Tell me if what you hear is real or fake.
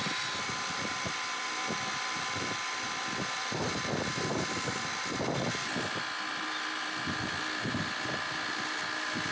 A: real